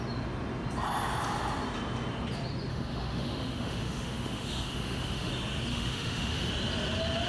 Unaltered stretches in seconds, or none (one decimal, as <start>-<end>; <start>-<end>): 0.0-2.7; 5.3-5.7; 6.5-7.3